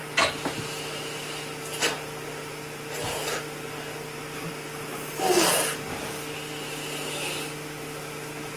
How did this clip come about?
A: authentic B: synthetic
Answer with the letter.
A